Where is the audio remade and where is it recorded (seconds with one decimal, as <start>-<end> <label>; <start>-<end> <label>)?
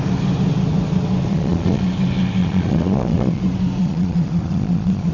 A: 0.0-1.3 recorded; 1.3-1.8 remade; 1.8-2.4 recorded; 2.4-3.4 remade; 3.4-3.8 recorded; 3.8-5.1 remade